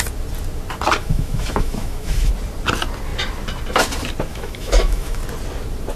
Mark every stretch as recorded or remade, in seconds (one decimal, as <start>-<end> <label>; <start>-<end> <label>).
0.0-1.0 recorded; 1.0-2.3 remade; 2.3-4.3 recorded; 4.3-5.2 remade; 5.2-6.0 recorded